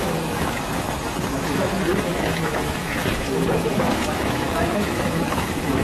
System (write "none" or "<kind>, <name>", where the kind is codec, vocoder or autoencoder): autoencoder, DAC-VAE